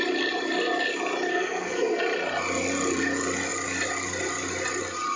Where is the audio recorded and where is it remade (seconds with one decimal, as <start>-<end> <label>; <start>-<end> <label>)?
0.0-1.3 recorded; 1.3-2.0 remade; 2.0-5.2 recorded

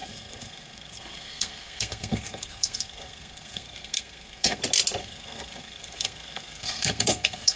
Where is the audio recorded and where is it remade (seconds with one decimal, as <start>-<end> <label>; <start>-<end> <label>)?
0.0-4.6 remade; 4.6-5.0 recorded; 5.0-7.6 remade

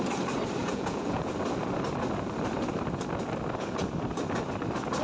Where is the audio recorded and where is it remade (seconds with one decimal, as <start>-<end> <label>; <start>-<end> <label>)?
0.0-0.6 recorded; 0.6-1.3 remade; 1.3-5.0 recorded

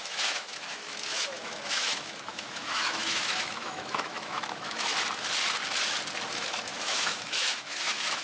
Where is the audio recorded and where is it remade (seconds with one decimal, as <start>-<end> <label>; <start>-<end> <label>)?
0.0-4.9 remade; 4.9-6.3 recorded; 6.3-8.2 remade

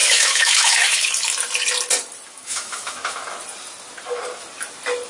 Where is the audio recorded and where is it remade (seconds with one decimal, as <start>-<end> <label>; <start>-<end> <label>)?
0.0-1.1 remade; 1.1-2.3 recorded; 2.3-3.2 remade; 3.2-5.1 recorded

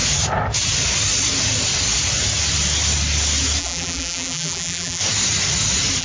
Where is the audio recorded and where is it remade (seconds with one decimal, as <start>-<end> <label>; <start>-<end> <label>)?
0.0-3.6 recorded; 3.6-5.0 remade; 5.0-6.0 recorded